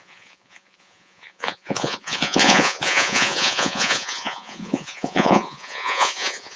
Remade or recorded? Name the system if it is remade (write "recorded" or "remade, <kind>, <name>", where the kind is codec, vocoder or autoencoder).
remade, vocoder, Vocos